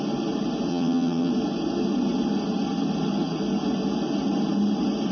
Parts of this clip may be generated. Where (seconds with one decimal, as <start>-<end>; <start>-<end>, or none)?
0.7-1.3

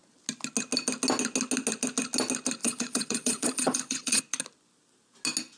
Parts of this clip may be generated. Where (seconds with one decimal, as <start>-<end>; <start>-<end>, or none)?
2.6-4.2

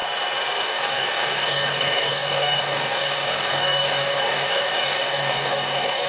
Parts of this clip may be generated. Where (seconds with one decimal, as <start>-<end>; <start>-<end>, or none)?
0.6-6.1

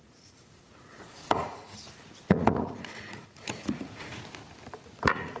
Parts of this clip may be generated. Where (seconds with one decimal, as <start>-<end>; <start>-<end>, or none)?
0.0-4.1; 5.0-5.4

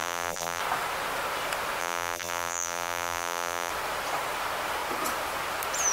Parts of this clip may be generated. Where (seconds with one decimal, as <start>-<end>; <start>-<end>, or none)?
0.0-0.6; 1.8-3.7

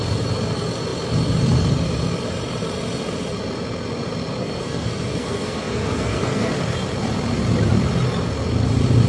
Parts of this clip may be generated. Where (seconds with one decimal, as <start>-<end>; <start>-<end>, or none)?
4.4-6.5

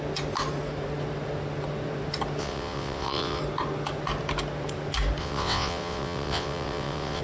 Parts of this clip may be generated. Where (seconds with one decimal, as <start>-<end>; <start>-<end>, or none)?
2.4-3.4; 5.2-7.2

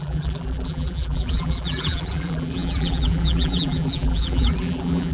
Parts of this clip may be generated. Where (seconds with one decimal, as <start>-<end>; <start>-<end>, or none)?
0.0-5.1